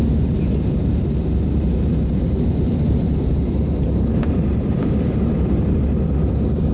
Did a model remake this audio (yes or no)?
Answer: yes